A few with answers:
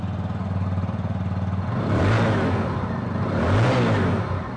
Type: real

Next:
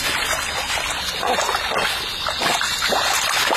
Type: real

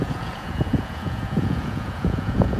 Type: fake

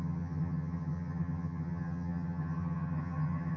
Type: fake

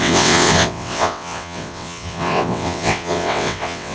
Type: fake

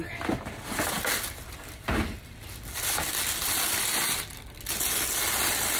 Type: real